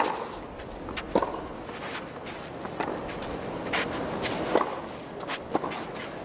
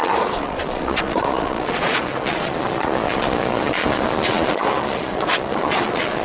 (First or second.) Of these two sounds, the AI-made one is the second